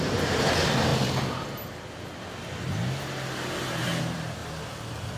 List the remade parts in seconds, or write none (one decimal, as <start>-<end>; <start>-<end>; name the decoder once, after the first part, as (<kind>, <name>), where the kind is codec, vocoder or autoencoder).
0.0-0.9 (vocoder, BigVGAN v2); 4.0-4.4